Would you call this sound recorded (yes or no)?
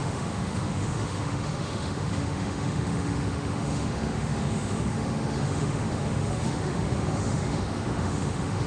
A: no